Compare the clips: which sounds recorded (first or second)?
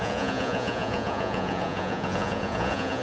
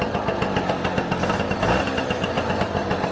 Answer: second